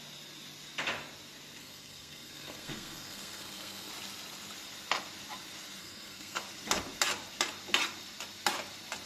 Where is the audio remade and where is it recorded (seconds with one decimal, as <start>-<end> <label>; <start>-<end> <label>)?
0.0-1.6 recorded; 1.6-3.9 remade; 3.9-5.8 recorded; 5.8-6.4 remade; 6.4-9.1 recorded

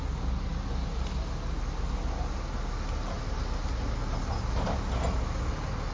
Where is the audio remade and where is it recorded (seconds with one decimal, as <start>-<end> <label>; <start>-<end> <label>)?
0.0-5.9 recorded

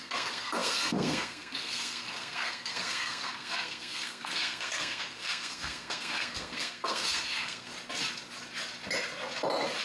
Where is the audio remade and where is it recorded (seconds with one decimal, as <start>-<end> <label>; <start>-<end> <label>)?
0.0-7.7 remade; 7.7-9.8 recorded

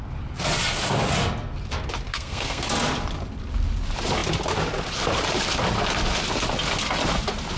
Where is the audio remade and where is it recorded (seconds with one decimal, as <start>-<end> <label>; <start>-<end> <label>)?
0.0-2.1 recorded; 2.1-2.6 remade; 2.6-7.6 recorded